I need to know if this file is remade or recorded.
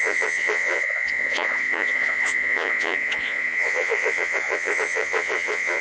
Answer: remade